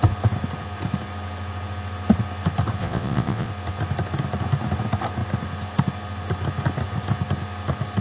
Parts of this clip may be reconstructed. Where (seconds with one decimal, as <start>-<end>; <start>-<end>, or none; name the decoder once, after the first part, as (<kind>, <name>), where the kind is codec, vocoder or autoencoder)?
2.8-3.5 (vocoder, Vocos)